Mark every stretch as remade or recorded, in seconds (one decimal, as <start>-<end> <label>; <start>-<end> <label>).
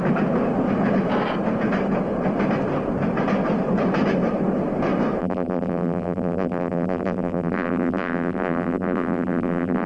0.0-5.2 recorded; 5.2-9.9 remade